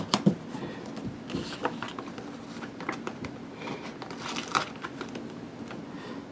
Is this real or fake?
real